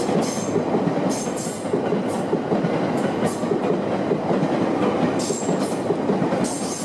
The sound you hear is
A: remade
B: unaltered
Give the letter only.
B